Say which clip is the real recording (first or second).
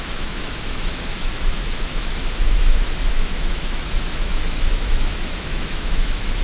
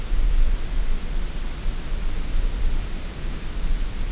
second